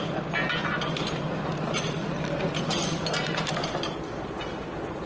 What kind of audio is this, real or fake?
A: real